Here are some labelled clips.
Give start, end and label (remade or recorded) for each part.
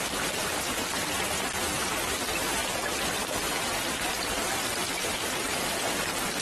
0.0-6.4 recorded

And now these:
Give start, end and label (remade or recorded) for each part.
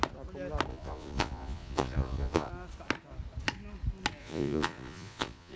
0.0-0.7 recorded; 0.7-2.5 remade; 2.5-4.2 recorded; 4.2-5.6 remade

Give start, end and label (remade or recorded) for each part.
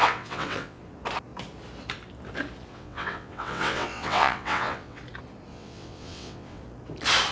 0.0-0.8 remade; 0.8-2.7 recorded; 2.7-5.0 remade; 5.0-5.5 recorded; 5.5-6.6 remade; 6.6-7.3 recorded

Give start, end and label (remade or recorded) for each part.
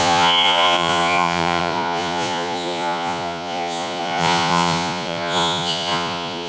0.0-6.5 remade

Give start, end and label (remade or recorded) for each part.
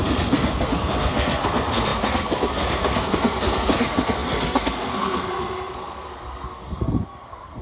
0.0-7.6 remade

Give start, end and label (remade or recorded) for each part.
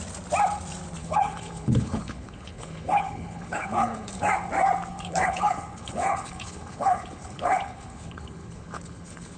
0.0-1.0 recorded; 1.0-4.3 remade; 4.3-4.9 recorded; 4.9-9.4 remade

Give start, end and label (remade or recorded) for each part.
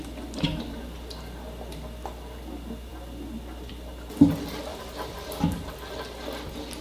0.0-4.7 recorded; 4.7-5.7 remade; 5.7-6.8 recorded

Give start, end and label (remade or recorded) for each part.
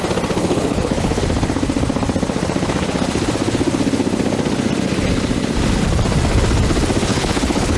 0.0-0.4 recorded; 0.4-1.2 remade; 1.2-7.1 recorded; 7.1-7.8 remade